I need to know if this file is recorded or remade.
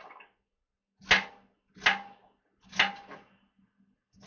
recorded